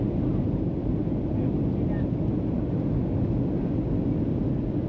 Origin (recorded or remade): recorded